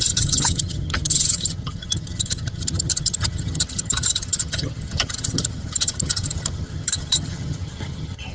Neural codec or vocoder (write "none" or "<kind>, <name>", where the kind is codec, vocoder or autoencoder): vocoder, HiFi-GAN